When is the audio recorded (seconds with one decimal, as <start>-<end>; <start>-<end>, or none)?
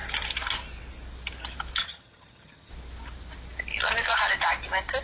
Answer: 0.0-1.8; 2.7-5.0